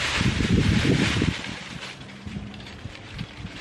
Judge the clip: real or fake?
fake